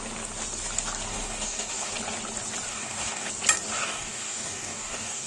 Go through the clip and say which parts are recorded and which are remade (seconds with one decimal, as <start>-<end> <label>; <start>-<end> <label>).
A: 0.0-1.1 recorded; 1.1-1.9 remade; 1.9-2.7 recorded; 2.7-3.3 remade; 3.3-3.8 recorded; 3.8-5.3 remade